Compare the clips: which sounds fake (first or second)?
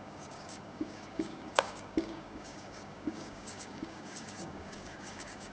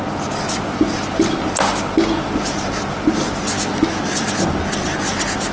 first